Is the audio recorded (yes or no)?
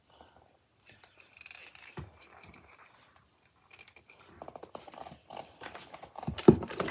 no